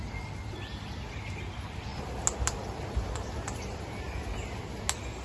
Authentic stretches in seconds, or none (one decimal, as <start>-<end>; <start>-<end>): 0.0-5.2

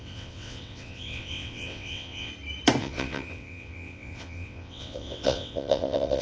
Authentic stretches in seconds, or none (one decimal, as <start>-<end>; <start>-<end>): 2.3-2.8

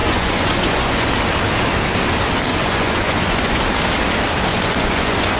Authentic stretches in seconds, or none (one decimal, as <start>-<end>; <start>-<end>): 1.1-2.5; 3.6-4.5

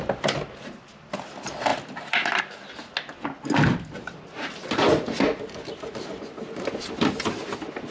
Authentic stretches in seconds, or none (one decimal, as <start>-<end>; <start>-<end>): 0.0-7.9

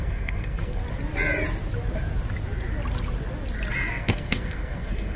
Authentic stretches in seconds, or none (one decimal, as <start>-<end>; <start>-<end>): 0.8-3.9

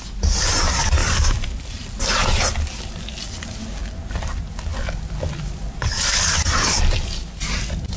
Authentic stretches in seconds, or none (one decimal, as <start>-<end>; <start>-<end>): 0.0-1.0; 2.0-8.0

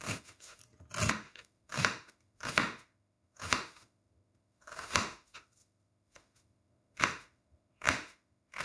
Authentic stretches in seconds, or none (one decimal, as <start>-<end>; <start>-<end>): 0.6-1.1

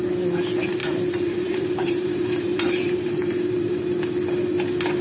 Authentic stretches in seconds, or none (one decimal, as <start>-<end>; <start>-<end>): 0.0-0.8; 3.8-5.0